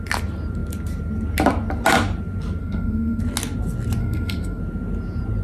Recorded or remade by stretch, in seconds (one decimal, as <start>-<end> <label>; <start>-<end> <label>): 0.0-2.6 recorded; 2.6-3.2 remade; 3.2-4.0 recorded; 4.0-4.6 remade; 4.6-5.4 recorded